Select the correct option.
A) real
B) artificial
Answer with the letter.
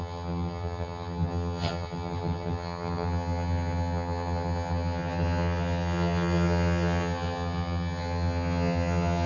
B